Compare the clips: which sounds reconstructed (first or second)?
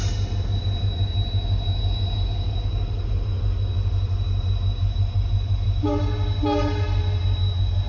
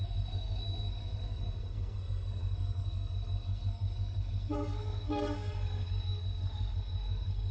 second